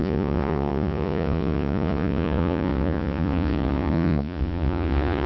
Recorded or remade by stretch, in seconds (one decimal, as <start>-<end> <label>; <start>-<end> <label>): 0.0-5.3 remade